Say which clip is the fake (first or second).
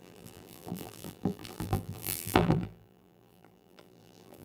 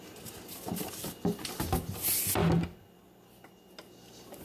first